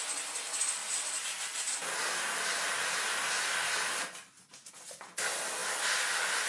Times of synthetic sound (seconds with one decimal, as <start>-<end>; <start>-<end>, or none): none